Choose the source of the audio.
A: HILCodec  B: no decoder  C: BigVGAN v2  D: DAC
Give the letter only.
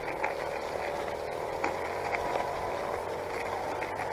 B